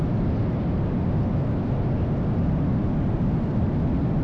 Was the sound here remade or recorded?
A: recorded